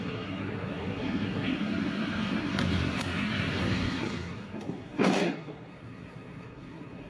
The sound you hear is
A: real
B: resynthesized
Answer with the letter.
B